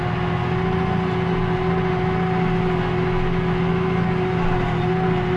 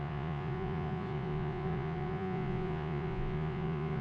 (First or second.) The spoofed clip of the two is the second